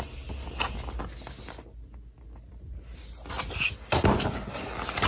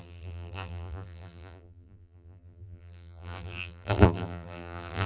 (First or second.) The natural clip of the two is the first